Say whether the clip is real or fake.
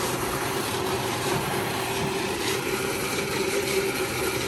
fake